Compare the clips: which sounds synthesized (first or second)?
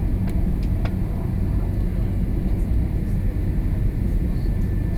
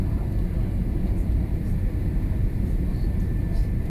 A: second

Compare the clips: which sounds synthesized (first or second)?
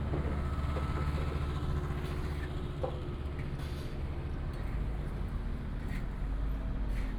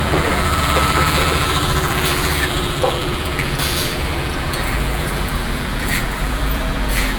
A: second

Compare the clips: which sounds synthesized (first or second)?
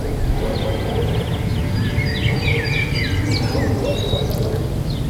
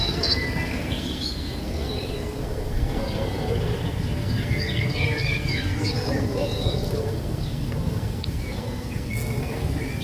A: second